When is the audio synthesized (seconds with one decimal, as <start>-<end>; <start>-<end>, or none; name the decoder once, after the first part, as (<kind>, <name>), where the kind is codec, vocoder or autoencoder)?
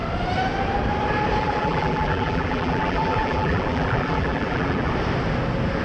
1.4-4.9 (vocoder, BigVGAN v2)